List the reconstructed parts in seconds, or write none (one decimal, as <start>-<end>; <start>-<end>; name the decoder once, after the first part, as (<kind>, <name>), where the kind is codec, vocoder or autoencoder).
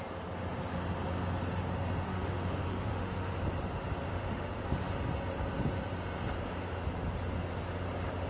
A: 2.1-3.4 (autoencoder, DAC-VAE); 4.1-4.6